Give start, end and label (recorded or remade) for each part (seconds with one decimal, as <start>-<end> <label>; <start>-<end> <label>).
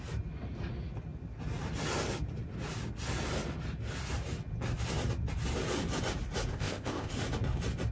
0.0-6.5 recorded; 6.5-7.1 remade; 7.1-7.9 recorded